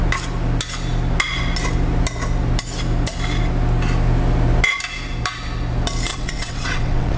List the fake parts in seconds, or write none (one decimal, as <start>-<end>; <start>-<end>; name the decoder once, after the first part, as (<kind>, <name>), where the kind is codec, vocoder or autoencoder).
6.1-7.2 (vocoder, WaveNeXt)